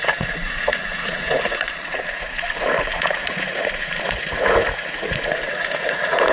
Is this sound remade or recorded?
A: remade